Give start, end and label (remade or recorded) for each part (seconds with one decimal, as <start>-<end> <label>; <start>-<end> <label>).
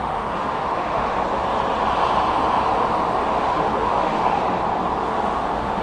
0.0-1.0 remade; 1.0-3.5 recorded; 3.5-4.4 remade; 4.4-5.1 recorded; 5.1-5.8 remade